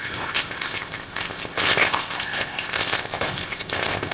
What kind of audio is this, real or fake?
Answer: fake